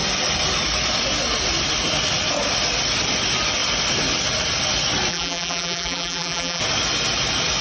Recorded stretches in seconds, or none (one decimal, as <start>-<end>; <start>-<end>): 0.0-5.1; 6.6-7.6